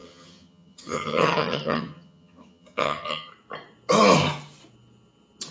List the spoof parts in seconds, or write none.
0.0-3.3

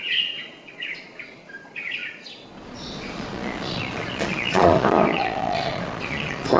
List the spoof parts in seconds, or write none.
0.0-6.6

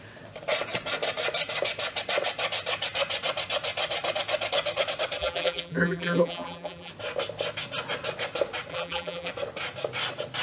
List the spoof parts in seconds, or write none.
5.2-6.9; 8.7-9.3

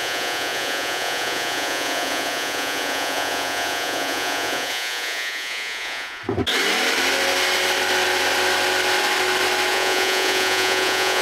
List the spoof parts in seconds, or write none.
0.0-6.2; 9.7-11.2